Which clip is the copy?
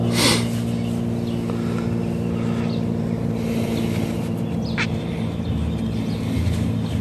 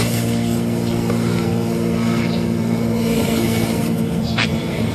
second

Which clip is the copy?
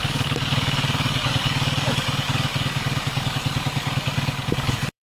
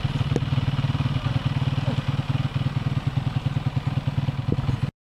first